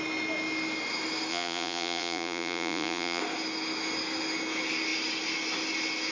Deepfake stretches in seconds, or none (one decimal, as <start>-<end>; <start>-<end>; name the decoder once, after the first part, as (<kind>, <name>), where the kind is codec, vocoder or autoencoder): 1.3-3.2 (vocoder, Vocos)

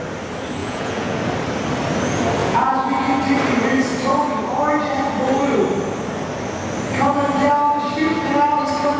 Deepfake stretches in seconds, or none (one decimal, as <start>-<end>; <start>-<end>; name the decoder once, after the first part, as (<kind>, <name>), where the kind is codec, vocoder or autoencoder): 0.6-1.2 (vocoder, Vocos); 2.4-3.2

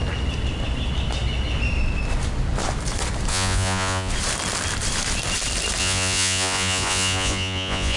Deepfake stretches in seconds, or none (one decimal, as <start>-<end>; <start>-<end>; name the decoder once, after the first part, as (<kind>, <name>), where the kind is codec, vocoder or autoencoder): 3.3-4.1 (vocoder, Vocos); 5.8-8.0

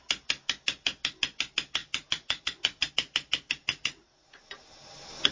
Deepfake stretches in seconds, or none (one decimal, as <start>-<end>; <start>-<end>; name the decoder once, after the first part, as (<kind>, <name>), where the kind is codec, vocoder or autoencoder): 1.8-2.9 (vocoder, Vocos); 3.6-4.4

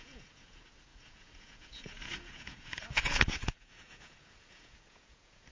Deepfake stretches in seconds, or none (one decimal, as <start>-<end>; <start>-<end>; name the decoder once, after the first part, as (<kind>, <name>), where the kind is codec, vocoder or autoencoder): 0.0-5.5 (vocoder, Vocos)

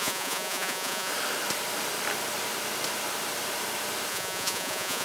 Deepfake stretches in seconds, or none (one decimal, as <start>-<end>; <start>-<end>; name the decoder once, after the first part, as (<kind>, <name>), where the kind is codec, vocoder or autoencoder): 0.0-1.1 (vocoder, Vocos); 4.1-5.0

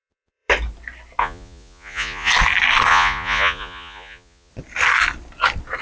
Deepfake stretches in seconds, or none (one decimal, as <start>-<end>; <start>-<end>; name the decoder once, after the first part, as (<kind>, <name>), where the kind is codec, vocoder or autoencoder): 0.0-0.5 (vocoder, Vocos); 1.2-2.3; 2.9-4.5